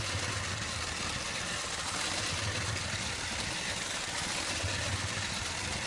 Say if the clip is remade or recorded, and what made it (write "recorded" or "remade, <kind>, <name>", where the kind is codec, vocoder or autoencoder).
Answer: recorded